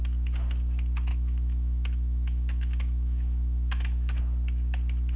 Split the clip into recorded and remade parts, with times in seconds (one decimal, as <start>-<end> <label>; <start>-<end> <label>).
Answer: 0.0-1.1 recorded; 1.1-4.2 remade; 4.2-5.2 recorded